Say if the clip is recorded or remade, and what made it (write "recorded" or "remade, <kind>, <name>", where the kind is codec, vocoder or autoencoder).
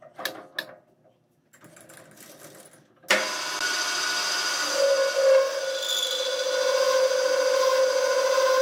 recorded